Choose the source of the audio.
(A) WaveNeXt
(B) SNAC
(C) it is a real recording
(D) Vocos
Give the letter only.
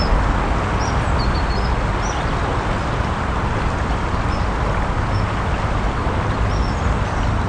C